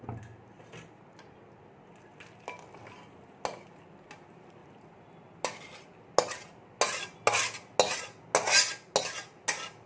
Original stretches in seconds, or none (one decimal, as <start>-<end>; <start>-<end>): 0.0-9.9